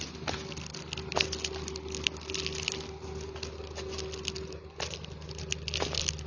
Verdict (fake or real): real